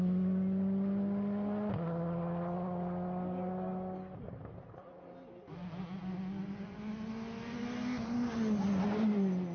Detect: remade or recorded recorded